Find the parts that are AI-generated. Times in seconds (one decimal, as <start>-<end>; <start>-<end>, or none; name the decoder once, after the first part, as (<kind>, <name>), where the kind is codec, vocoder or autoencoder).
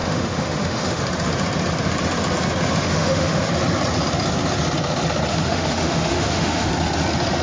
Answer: 0.0-1.0 (autoencoder, DAC-VAE); 2.8-3.5; 5.3-6.7